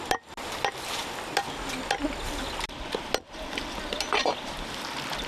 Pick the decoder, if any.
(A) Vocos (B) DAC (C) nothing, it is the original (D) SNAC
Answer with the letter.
C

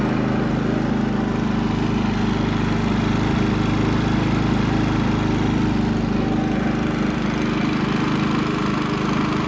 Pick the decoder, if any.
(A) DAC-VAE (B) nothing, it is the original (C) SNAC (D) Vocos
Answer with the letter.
B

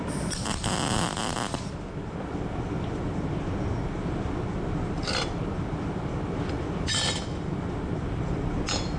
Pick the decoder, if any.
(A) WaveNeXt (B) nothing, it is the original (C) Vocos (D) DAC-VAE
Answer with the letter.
B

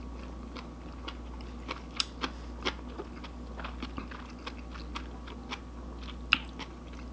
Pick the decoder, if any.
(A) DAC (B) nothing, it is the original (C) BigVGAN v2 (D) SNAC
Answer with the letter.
B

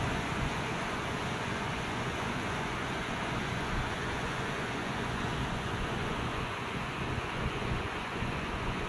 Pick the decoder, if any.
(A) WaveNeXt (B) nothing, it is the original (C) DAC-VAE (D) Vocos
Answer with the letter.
D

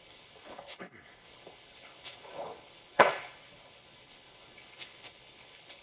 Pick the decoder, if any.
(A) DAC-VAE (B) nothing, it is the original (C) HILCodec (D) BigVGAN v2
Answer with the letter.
C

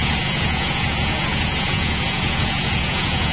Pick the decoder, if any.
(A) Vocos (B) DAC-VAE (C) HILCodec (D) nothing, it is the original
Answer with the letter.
A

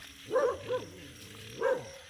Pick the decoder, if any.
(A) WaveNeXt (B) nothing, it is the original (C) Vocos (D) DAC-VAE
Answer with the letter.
B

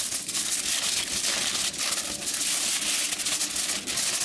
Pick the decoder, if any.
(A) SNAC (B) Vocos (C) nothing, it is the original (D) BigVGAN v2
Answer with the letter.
C